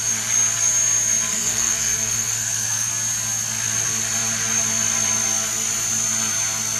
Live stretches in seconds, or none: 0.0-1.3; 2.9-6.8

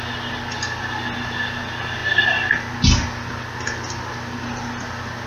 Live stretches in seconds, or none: 0.0-5.3

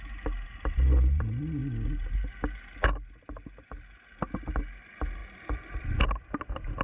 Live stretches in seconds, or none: 0.0-6.8

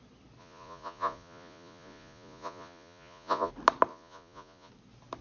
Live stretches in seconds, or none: 0.0-0.4; 3.5-3.9; 4.7-5.2